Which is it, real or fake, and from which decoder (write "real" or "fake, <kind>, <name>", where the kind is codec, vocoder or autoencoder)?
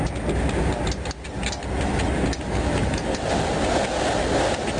real